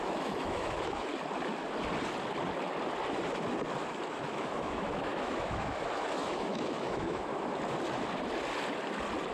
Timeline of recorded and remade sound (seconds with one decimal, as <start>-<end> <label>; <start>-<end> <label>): 0.0-1.1 remade; 1.1-4.1 recorded; 4.1-7.3 remade; 7.3-9.3 recorded